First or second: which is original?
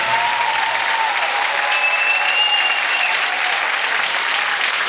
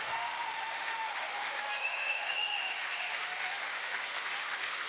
first